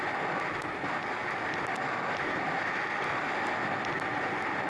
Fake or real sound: real